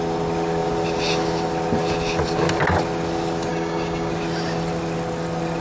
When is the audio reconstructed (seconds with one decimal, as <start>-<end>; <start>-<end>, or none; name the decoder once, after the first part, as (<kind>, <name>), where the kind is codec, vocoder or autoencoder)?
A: 3.5-4.1 (codec, DAC)